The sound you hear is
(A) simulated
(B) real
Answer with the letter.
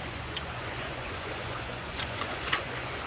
A